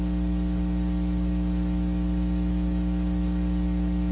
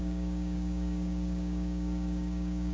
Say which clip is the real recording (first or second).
first